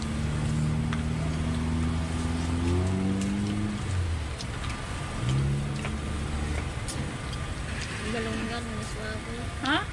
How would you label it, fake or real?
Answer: real